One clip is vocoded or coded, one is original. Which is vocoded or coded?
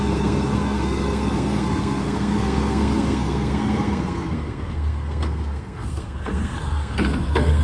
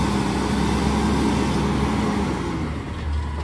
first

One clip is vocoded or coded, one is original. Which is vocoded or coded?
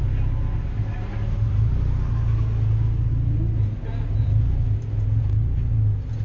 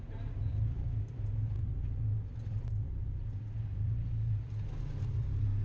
second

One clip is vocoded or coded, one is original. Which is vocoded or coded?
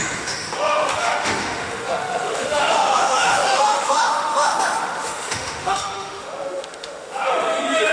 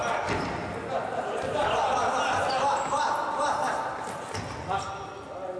first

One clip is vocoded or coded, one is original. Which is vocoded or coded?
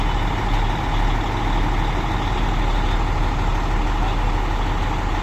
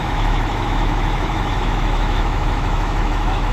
second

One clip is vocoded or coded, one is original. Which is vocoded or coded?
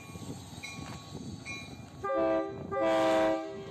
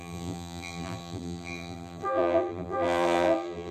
second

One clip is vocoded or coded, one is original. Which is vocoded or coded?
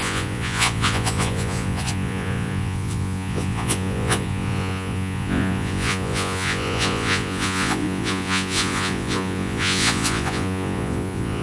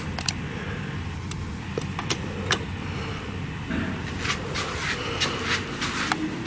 first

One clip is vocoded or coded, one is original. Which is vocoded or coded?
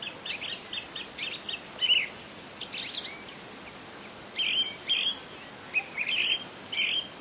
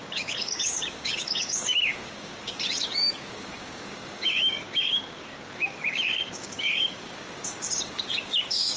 second